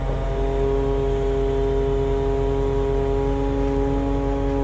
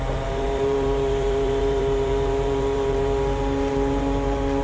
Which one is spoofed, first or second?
second